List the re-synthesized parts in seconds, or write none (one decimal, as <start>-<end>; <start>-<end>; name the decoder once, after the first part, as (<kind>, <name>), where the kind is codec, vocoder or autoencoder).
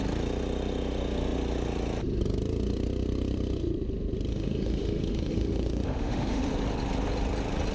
4.3-6.4 (autoencoder, DAC-VAE)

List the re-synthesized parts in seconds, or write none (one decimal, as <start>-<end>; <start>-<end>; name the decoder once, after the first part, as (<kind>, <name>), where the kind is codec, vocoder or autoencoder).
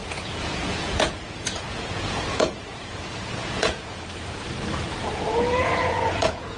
0.0-4.0 (vocoder, Vocos); 5.0-6.6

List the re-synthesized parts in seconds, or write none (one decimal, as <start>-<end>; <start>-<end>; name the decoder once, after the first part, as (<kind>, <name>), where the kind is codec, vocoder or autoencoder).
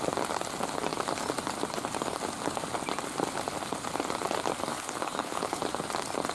4.7-5.6 (codec, HILCodec)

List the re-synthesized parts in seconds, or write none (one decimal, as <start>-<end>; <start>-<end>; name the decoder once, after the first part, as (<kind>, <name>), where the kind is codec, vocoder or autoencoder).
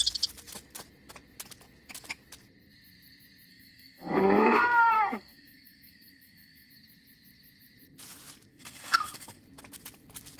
3.5-6.7 (codec, SNAC); 8.5-9.4